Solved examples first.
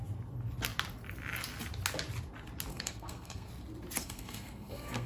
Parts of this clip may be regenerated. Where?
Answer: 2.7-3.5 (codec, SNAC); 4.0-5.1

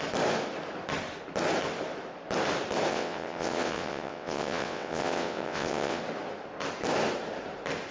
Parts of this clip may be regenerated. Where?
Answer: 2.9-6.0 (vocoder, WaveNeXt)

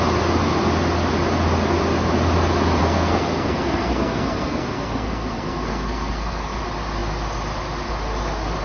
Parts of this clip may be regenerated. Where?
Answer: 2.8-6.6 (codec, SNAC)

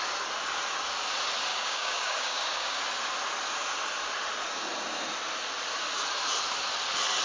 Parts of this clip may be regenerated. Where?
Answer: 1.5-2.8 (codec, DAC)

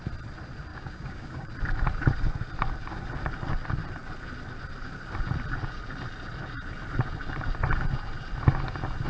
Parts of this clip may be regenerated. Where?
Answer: 0.7-1.5 (codec, DAC)

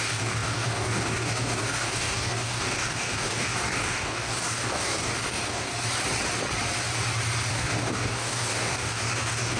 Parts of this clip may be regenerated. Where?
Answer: 0.0-5.7 (codec, DAC); 7.5-9.6